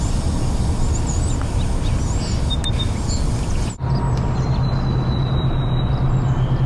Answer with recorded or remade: recorded